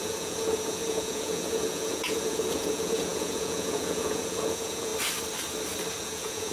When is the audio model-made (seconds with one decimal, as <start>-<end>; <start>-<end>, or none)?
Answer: 0.0-4.9; 6.0-6.5